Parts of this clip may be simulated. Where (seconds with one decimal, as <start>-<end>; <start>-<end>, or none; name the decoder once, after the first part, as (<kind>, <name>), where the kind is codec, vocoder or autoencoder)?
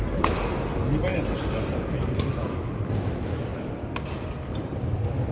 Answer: none